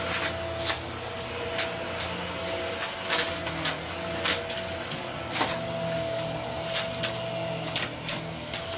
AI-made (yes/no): no